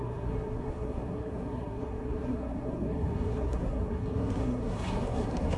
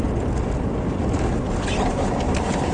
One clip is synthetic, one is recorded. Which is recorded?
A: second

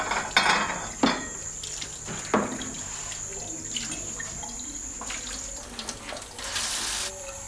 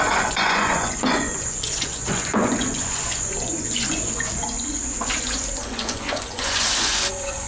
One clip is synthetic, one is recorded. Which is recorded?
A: first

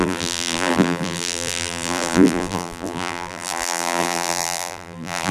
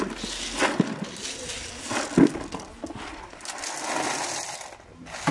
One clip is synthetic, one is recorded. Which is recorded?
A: second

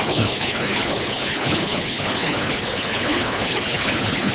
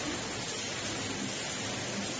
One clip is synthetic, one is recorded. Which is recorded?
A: second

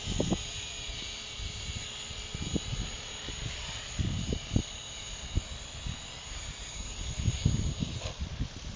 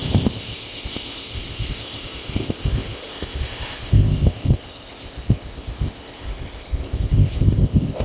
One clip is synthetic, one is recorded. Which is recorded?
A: first